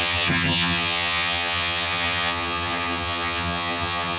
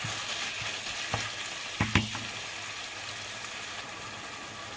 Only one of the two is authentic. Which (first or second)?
second